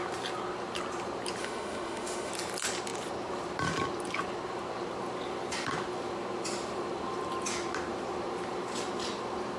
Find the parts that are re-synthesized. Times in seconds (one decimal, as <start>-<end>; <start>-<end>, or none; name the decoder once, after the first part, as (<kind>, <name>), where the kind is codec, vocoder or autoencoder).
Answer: 1.4-2.3 (autoencoder, DAC-VAE)